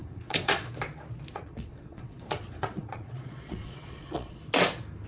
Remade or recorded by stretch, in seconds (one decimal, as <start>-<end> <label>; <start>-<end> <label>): 0.0-0.7 remade; 0.7-1.3 recorded; 1.3-4.4 remade; 4.4-5.1 recorded